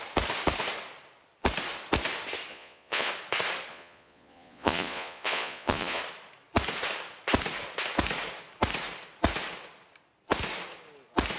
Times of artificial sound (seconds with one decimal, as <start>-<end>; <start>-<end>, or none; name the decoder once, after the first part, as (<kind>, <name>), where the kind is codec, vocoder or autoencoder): 2.5-3.1 (vocoder, Vocos); 3.7-6.0